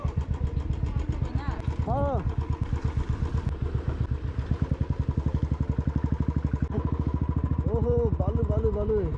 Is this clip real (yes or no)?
yes